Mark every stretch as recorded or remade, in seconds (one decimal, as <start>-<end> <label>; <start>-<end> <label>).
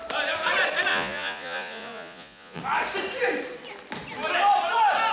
0.0-0.9 recorded; 0.9-2.6 remade; 2.6-5.1 recorded